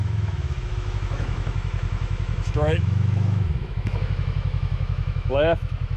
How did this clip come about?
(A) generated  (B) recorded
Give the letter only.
A